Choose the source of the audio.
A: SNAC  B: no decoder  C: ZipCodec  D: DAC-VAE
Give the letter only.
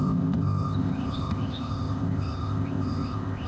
C